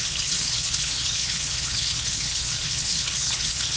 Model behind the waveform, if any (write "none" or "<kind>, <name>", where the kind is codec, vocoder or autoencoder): codec, HILCodec